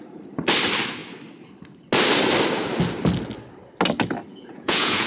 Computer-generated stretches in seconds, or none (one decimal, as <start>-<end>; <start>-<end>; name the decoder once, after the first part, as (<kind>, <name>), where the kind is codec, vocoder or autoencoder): 4.3-5.1 (vocoder, Vocos)